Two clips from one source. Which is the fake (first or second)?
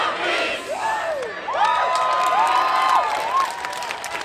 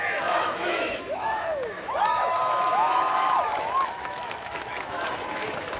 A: second